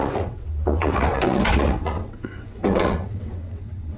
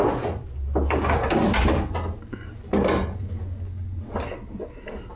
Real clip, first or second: second